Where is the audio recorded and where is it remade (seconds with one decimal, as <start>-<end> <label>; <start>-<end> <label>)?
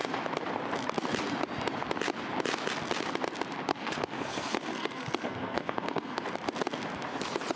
0.0-3.7 recorded; 3.7-6.2 remade; 6.2-7.6 recorded